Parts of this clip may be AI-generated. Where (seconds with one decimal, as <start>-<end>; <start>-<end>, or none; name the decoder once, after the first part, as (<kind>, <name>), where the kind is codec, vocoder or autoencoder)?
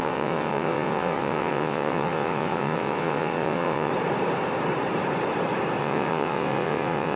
0.0-3.9 (vocoder, WaveNeXt); 5.8-7.2